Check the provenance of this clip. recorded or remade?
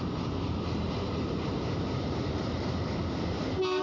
remade